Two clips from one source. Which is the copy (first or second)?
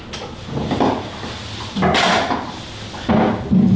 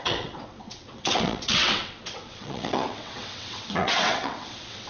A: second